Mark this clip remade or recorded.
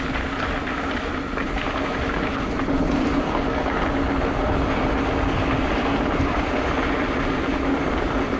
recorded